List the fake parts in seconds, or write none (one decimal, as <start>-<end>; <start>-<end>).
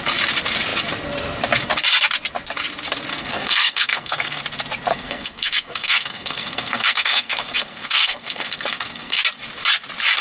3.1-4.4; 4.9-9.2